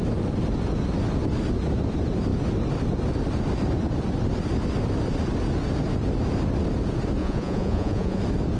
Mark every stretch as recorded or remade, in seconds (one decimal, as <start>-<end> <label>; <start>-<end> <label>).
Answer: 0.0-7.2 recorded; 7.2-8.2 remade; 8.2-8.6 recorded